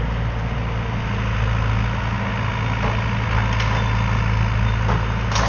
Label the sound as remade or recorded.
recorded